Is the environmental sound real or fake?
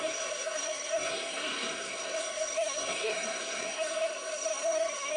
fake